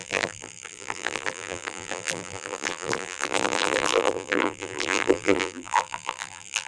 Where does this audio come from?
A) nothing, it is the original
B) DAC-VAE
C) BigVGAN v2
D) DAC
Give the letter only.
C